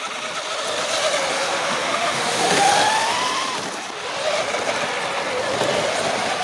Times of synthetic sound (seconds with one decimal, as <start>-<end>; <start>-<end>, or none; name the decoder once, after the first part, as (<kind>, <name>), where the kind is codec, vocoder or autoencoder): 1.3-2.7 (autoencoder, DAC-VAE)